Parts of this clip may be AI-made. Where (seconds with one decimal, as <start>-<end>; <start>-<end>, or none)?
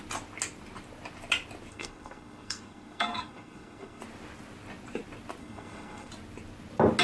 1.7-4.0; 5.4-6.1